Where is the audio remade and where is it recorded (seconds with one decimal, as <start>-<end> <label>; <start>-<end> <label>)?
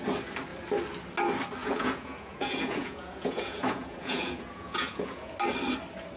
0.0-1.6 recorded; 1.6-5.3 remade; 5.3-6.2 recorded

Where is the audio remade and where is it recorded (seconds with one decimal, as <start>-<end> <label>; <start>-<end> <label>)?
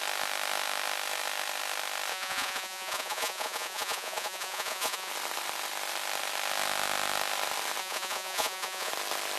0.0-2.1 recorded; 2.1-5.1 remade; 5.1-7.8 recorded; 7.8-8.9 remade; 8.9-9.4 recorded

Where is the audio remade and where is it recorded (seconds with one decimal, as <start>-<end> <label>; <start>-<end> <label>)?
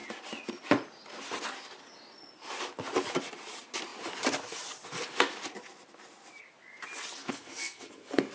0.0-7.2 recorded; 7.2-8.3 remade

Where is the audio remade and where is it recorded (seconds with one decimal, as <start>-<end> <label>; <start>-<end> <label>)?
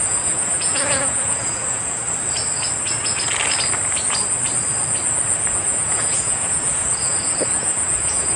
0.0-2.0 remade; 2.0-5.5 recorded; 5.5-8.4 remade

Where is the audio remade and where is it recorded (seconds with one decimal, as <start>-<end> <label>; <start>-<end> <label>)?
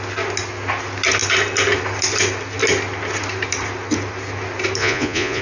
0.0-4.8 recorded; 4.8-5.4 remade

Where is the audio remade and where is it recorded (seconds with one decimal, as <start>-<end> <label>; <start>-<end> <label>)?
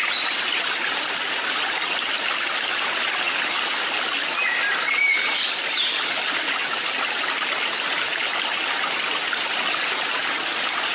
0.0-10.9 recorded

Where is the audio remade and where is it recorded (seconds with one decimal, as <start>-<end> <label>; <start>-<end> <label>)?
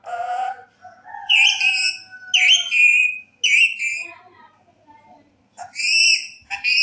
0.0-1.2 recorded; 1.2-1.7 remade; 1.7-4.7 recorded; 4.7-6.8 remade